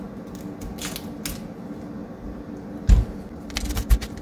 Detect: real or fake real